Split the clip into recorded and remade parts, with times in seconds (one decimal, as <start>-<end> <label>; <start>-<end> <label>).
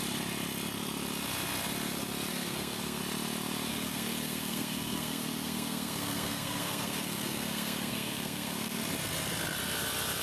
0.0-2.3 recorded; 2.3-3.0 remade; 3.0-3.7 recorded; 3.7-8.8 remade; 8.8-10.2 recorded